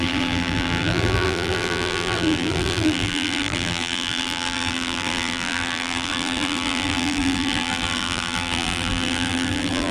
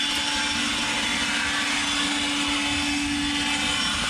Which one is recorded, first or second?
second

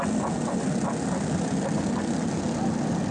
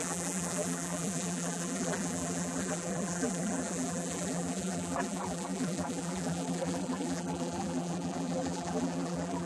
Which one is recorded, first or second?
first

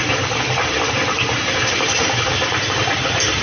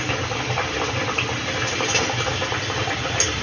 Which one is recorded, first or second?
second